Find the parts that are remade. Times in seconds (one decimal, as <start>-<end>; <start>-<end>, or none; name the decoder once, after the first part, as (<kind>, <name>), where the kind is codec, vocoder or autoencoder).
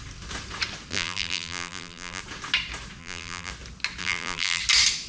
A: 0.9-2.2 (vocoder, BigVGAN v2); 3.0-3.5; 4.0-4.6